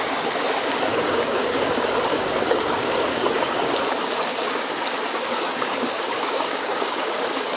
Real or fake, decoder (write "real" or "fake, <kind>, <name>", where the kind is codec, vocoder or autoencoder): fake, codec, DAC